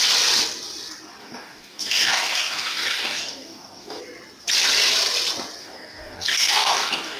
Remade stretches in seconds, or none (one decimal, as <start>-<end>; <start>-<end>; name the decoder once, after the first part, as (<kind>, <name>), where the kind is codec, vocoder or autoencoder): 1.2-4.0 (codec, DAC); 5.6-7.2